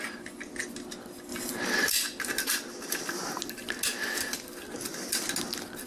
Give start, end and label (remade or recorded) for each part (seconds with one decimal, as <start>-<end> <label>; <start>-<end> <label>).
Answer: 0.0-1.3 recorded; 1.3-1.9 remade; 1.9-5.9 recorded